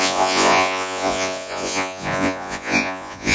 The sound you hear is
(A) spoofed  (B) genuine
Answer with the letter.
A